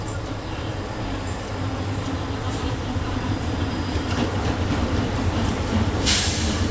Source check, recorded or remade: remade